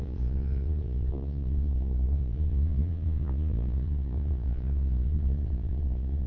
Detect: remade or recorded remade